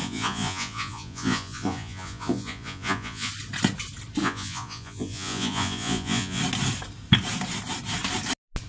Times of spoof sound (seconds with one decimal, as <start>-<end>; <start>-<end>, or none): 0.0-3.3; 4.2-6.4